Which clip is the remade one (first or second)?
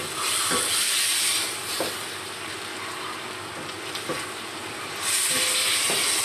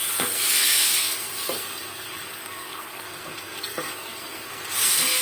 second